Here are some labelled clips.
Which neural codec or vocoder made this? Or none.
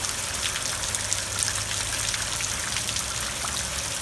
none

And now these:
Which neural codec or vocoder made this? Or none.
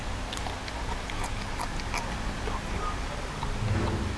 none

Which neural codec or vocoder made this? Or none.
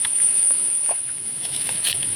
autoencoder, DAC-VAE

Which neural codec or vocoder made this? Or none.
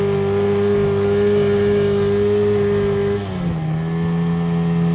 none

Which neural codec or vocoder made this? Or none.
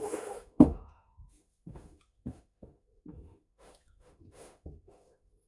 autoencoder, DAC-VAE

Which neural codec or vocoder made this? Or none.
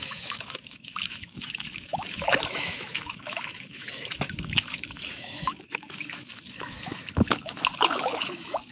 autoencoder, DAC-VAE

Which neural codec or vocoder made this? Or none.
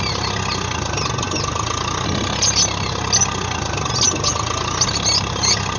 none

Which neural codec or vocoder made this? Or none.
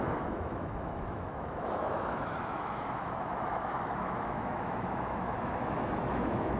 autoencoder, DAC-VAE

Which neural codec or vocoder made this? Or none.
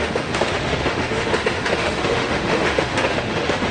autoencoder, DAC-VAE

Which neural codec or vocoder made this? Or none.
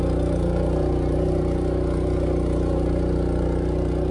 none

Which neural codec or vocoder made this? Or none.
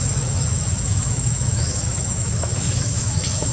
autoencoder, DAC-VAE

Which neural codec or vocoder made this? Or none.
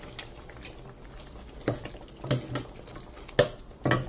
none